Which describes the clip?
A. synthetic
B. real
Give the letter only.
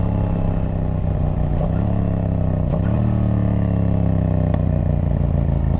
B